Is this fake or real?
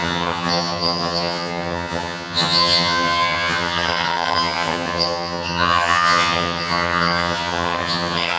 fake